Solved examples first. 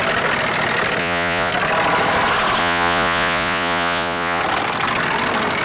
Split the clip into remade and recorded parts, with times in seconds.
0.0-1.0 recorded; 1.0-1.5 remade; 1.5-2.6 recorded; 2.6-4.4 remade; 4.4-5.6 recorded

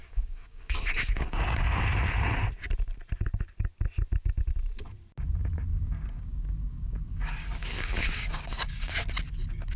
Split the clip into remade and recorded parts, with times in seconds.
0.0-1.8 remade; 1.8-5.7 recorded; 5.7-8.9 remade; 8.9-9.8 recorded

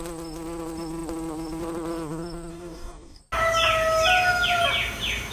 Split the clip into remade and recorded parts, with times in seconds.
0.0-2.5 recorded; 2.5-3.2 remade; 3.2-5.3 recorded